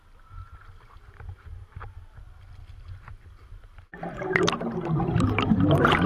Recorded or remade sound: recorded